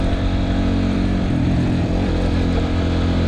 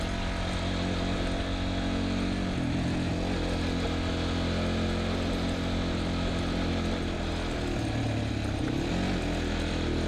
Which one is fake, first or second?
first